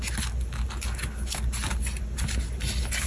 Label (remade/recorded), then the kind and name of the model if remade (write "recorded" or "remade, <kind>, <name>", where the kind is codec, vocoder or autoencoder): recorded